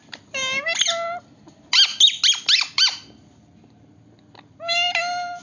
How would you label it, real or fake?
real